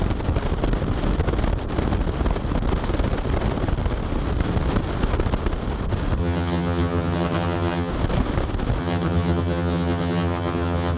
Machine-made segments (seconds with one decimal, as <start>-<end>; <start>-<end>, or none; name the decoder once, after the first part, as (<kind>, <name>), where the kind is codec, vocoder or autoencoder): 6.2-7.9 (vocoder, HiFi-GAN); 8.8-11.0

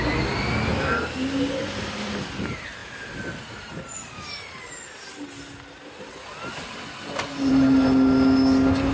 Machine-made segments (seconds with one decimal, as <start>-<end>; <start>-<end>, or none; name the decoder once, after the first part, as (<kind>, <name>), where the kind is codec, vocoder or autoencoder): none

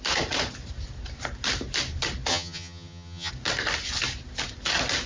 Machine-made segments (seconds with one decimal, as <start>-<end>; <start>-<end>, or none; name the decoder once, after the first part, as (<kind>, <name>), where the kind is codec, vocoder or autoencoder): 2.3-3.3 (vocoder, HiFi-GAN)

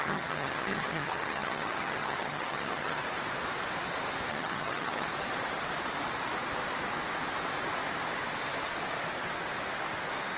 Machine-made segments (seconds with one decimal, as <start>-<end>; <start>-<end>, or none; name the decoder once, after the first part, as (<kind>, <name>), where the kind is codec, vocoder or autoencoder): 0.0-3.0 (vocoder, HiFi-GAN); 4.3-5.1

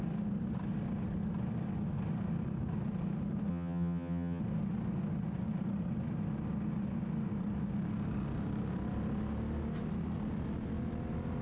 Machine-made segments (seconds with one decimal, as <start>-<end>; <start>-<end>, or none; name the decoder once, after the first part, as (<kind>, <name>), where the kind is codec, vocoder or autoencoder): 3.5-4.4 (vocoder, HiFi-GAN)